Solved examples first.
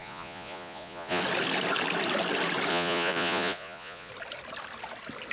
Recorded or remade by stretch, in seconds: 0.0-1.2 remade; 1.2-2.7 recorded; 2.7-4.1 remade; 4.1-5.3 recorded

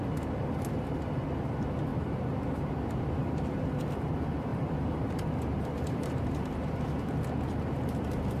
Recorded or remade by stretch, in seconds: 0.0-1.9 recorded; 1.9-3.7 remade; 3.7-4.5 recorded; 4.5-6.6 remade; 6.6-8.4 recorded

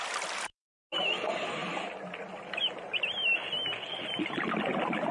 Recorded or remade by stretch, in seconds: 0.0-5.1 recorded

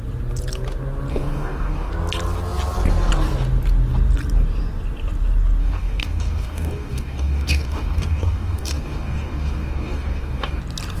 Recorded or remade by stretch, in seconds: 0.0-1.1 recorded; 1.1-1.9 remade; 1.9-5.6 recorded; 5.6-10.6 remade; 10.6-11.0 recorded

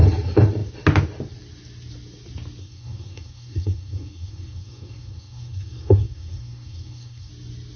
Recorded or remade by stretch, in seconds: 0.0-2.6 recorded; 2.6-7.3 remade; 7.3-7.8 recorded

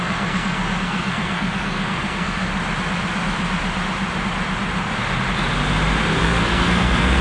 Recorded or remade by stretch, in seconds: 0.0-2.5 remade; 2.5-6.2 recorded; 6.2-7.2 remade

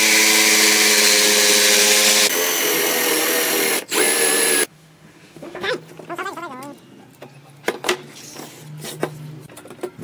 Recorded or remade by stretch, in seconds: 0.0-4.7 recorded; 4.7-5.7 remade; 5.7-10.0 recorded

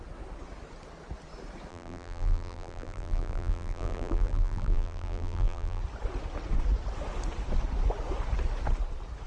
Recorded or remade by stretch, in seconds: 0.0-1.7 recorded; 1.7-5.8 remade; 5.8-9.3 recorded